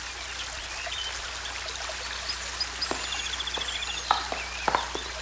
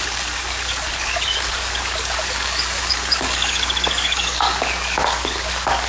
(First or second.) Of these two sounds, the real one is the first